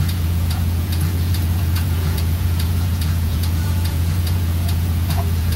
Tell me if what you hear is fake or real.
fake